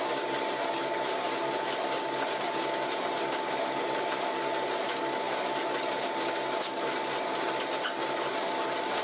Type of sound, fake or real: real